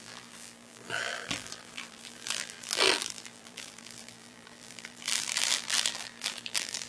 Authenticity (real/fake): fake